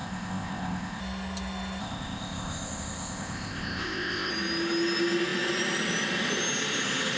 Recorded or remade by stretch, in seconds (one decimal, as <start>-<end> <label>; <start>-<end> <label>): 0.0-1.0 remade; 1.0-1.8 recorded; 1.8-4.3 remade; 4.3-7.2 recorded